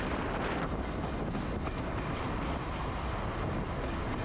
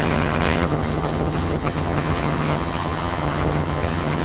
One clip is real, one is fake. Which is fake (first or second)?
second